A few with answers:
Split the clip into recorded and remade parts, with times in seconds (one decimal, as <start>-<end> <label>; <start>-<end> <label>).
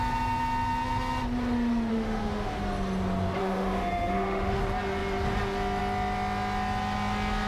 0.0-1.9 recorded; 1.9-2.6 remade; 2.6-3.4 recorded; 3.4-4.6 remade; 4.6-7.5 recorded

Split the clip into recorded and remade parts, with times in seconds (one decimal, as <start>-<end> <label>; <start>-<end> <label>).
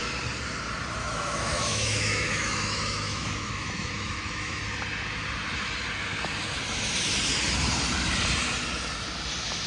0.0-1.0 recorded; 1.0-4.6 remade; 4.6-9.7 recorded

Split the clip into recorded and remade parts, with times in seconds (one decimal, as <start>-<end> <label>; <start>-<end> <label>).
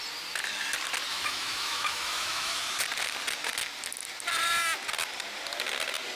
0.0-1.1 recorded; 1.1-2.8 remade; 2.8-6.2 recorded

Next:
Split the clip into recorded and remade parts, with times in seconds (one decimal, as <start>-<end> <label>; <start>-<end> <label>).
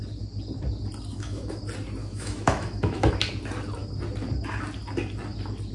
0.0-1.1 recorded; 1.1-1.6 remade; 1.6-2.0 recorded; 2.0-3.1 remade; 3.1-5.7 recorded